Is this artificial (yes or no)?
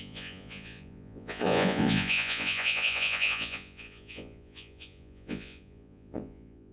yes